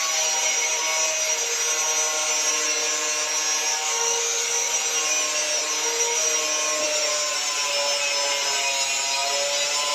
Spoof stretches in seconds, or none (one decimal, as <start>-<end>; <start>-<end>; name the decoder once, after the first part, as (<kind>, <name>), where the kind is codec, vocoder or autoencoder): 3.7-4.7 (codec, DAC)